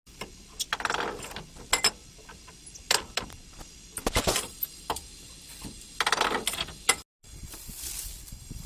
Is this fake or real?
real